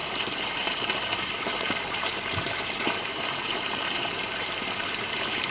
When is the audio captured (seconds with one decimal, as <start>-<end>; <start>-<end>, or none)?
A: none